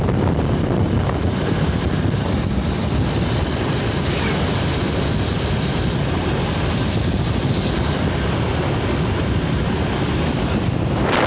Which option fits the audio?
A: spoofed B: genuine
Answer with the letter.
B